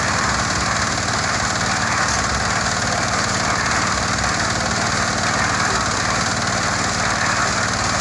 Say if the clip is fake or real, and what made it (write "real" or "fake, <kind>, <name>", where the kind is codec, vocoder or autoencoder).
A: real